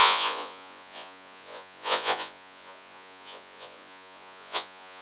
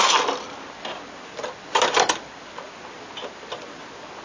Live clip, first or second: second